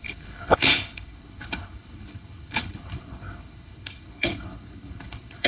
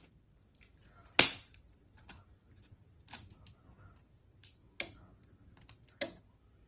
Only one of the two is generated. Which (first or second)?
first